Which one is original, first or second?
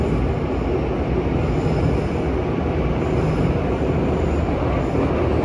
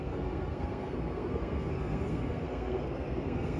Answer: first